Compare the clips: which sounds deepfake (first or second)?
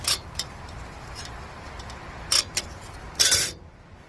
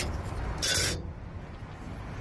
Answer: first